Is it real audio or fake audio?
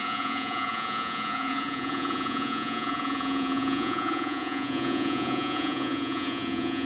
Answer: fake